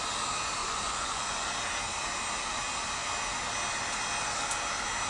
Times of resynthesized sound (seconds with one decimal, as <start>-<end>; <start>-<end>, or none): 0.6-1.5